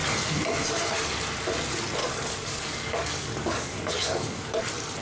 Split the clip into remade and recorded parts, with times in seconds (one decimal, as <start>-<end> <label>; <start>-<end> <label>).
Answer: 0.0-2.0 recorded; 2.0-4.6 remade; 4.6-5.0 recorded